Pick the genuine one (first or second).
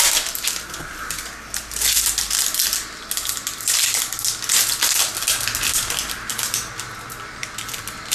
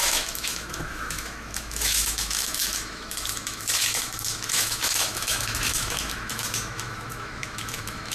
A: first